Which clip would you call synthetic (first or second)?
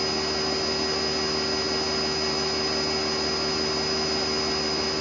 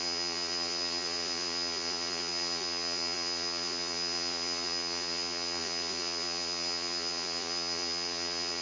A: second